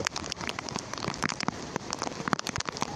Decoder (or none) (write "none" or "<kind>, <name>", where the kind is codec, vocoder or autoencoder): vocoder, BigVGAN v2